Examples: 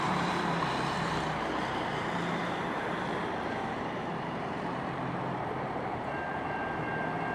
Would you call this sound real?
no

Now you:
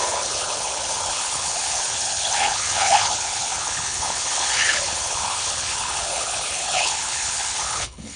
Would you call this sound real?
no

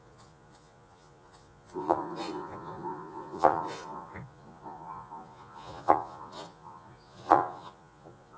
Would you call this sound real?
no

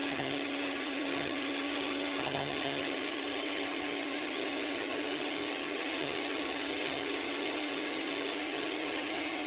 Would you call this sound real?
no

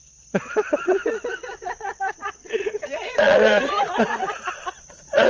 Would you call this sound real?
no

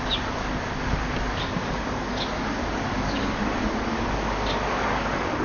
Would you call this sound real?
no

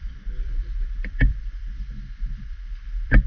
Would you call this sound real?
no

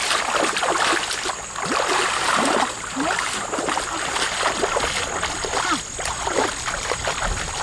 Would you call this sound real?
yes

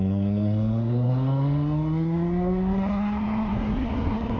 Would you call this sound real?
no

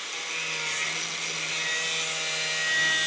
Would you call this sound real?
yes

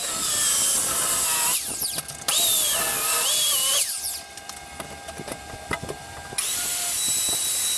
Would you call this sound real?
yes